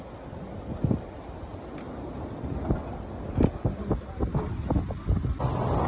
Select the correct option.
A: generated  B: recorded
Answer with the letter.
B